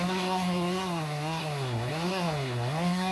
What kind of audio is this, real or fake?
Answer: fake